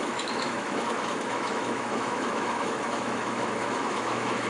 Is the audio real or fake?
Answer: fake